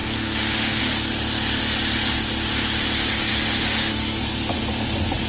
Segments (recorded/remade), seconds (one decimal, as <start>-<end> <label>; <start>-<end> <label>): 0.0-0.8 remade; 0.8-3.3 recorded; 3.3-4.2 remade; 4.2-5.3 recorded